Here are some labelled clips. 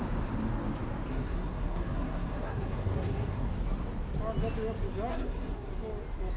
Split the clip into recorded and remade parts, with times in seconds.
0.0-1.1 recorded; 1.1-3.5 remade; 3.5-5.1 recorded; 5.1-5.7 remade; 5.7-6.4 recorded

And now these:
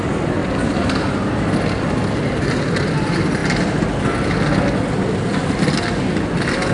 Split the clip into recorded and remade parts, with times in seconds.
0.0-6.7 recorded

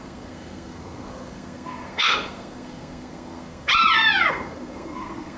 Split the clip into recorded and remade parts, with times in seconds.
0.0-3.7 remade; 3.7-4.3 recorded; 4.3-5.4 remade

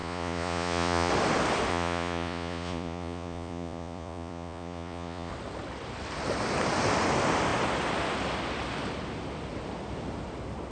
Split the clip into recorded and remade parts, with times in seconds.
0.0-1.1 remade; 1.1-1.7 recorded; 1.7-5.3 remade; 5.3-10.7 recorded